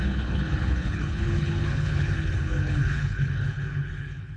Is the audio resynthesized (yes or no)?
yes